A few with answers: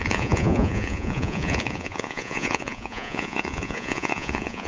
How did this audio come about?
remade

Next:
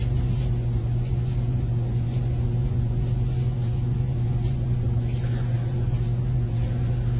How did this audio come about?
remade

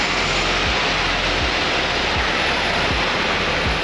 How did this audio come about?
recorded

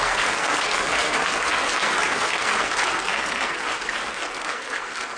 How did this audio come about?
remade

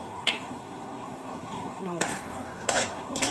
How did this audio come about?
remade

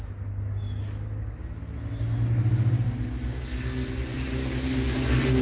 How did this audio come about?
recorded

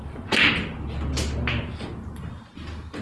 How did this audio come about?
recorded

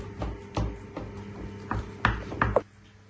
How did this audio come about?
recorded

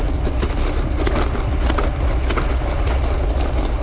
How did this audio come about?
recorded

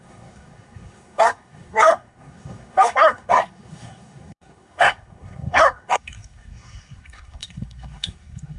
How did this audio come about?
remade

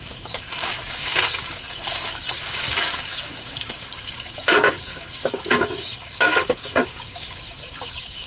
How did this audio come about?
remade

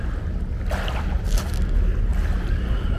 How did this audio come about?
recorded